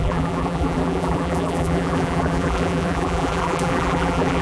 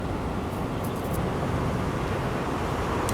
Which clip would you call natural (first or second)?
second